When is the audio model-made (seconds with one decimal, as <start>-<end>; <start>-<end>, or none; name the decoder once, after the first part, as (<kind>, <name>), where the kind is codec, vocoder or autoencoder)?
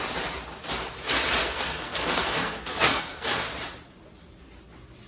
1.4-3.5 (codec, SNAC)